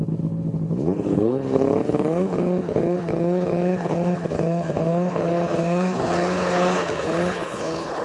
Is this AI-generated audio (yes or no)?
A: yes